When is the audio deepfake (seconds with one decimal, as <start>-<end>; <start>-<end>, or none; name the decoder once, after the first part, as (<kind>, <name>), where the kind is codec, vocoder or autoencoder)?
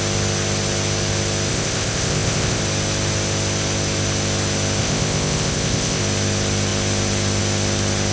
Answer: 1.5-2.6 (codec, ZipCodec); 4.8-6.0